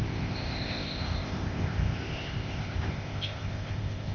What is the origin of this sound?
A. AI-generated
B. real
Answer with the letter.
A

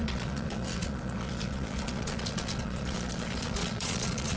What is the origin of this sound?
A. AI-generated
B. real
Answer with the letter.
A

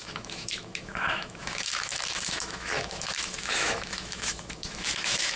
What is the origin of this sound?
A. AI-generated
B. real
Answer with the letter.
A